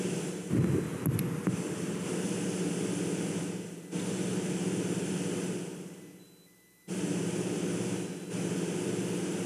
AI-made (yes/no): no